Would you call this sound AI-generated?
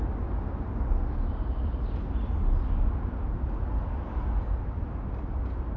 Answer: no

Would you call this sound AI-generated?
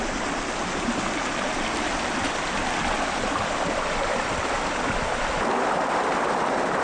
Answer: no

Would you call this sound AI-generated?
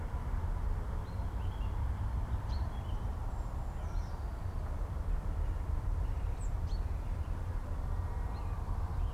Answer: yes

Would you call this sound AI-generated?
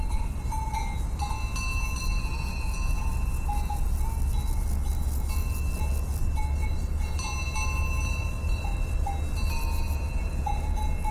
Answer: no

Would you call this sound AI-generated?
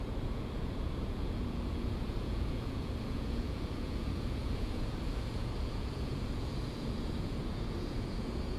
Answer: yes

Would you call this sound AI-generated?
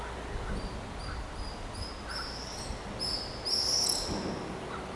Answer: no